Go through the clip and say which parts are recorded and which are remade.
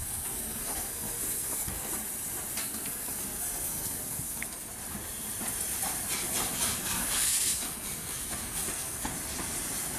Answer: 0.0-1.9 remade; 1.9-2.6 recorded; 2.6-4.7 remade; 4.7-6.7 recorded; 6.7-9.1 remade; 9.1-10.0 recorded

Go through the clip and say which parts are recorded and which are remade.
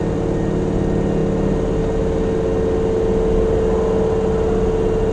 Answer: 0.0-5.1 recorded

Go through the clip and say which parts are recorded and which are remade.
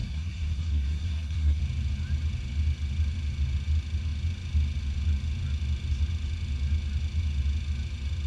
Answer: 0.0-1.6 remade; 1.6-8.3 recorded